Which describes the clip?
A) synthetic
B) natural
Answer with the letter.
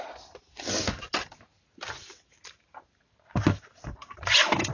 A